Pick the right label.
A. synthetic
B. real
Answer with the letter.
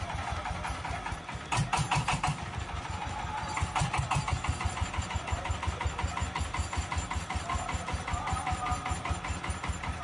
B